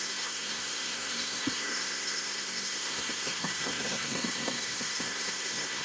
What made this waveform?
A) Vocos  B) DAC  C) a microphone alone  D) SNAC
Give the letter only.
D